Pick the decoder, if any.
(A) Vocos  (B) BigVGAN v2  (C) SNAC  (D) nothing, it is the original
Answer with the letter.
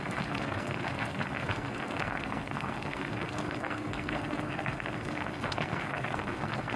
C